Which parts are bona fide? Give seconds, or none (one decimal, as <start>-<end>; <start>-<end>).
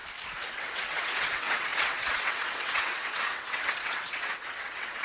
0.0-0.5